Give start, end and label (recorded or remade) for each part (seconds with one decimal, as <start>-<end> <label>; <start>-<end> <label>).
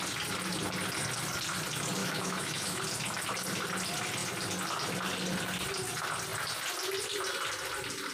0.0-2.0 recorded; 2.0-2.8 remade; 2.8-8.1 recorded